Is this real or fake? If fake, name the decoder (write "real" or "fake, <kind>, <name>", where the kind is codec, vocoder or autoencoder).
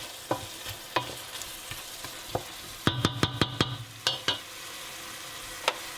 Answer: real